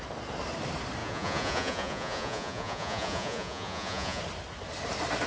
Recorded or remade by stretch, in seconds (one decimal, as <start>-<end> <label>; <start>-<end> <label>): 0.0-1.0 recorded; 1.0-4.2 remade; 4.2-5.3 recorded